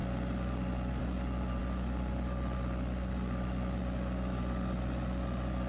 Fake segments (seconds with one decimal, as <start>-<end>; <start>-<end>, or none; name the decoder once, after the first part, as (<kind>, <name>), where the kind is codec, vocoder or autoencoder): none